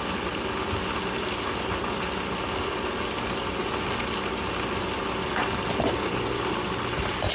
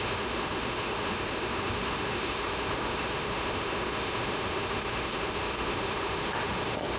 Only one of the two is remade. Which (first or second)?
second